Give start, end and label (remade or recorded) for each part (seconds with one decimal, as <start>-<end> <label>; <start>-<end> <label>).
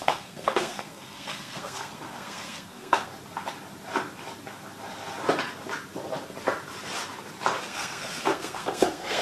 0.0-3.1 remade; 3.1-7.6 recorded; 7.6-9.2 remade